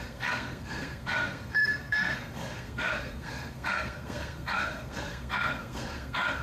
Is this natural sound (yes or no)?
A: no